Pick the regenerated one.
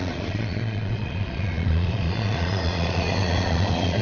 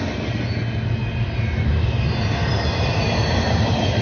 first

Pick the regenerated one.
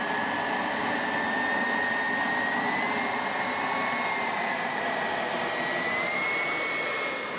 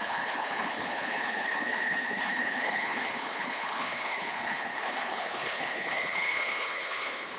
second